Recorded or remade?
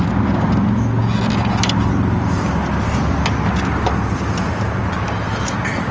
recorded